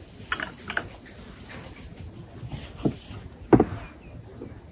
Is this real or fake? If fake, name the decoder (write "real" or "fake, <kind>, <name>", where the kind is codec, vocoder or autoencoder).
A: real